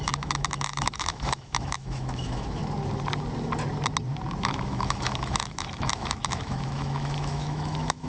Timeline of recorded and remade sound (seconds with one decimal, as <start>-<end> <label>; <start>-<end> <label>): 0.0-2.6 remade; 2.6-4.4 recorded; 4.4-8.1 remade